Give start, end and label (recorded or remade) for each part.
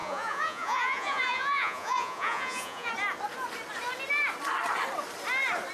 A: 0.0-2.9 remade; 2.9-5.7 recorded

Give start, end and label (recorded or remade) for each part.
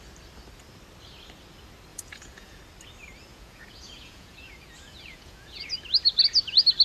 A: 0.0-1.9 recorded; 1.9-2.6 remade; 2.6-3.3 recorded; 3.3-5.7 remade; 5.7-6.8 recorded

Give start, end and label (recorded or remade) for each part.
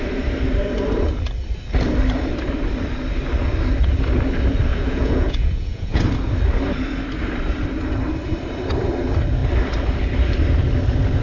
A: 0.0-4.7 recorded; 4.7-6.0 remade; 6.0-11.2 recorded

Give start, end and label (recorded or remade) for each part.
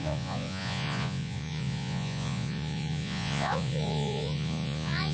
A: 0.0-5.1 remade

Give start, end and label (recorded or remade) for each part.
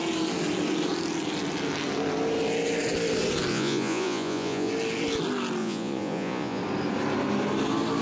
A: 0.0-3.5 recorded; 3.5-4.7 remade; 4.7-5.6 recorded; 5.6-6.6 remade; 6.6-8.0 recorded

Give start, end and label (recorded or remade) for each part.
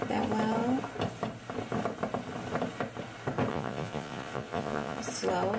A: 0.0-3.5 recorded; 3.5-5.0 remade; 5.0-5.6 recorded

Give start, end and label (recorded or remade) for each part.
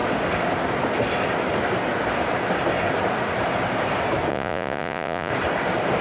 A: 0.0-4.3 recorded; 4.3-5.3 remade; 5.3-6.0 recorded